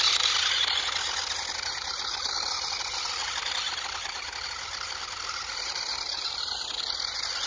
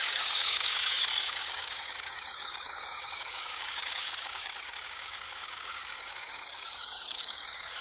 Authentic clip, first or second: first